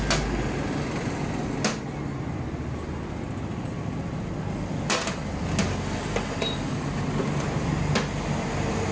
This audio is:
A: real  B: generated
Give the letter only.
A